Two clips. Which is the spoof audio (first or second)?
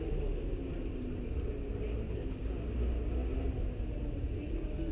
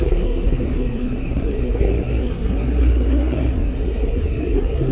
second